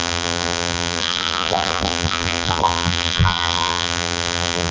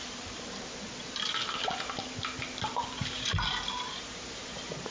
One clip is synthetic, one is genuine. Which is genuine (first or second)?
second